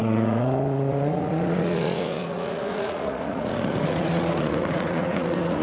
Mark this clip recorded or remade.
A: remade